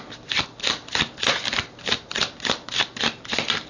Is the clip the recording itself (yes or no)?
yes